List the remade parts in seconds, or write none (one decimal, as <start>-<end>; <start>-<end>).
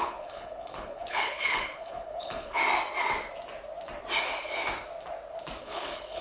0.0-2.6; 5.6-6.2